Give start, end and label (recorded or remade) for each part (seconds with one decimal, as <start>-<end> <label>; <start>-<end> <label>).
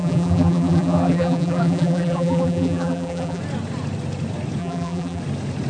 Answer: 0.0-3.4 remade; 3.4-4.6 recorded; 4.6-5.2 remade; 5.2-5.7 recorded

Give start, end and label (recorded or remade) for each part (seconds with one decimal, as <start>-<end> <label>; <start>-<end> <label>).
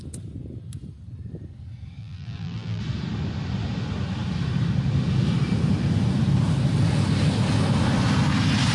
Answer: 0.0-2.0 recorded; 2.0-2.8 remade; 2.8-8.7 recorded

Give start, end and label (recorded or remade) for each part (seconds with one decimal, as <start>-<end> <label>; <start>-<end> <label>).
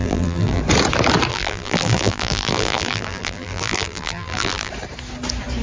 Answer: 0.0-0.6 remade; 0.6-1.3 recorded; 1.3-4.7 remade; 4.7-5.6 recorded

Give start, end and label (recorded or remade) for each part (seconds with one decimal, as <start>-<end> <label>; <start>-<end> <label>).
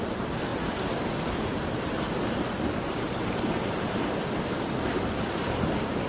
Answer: 0.0-4.9 remade; 4.9-5.4 recorded; 5.4-6.1 remade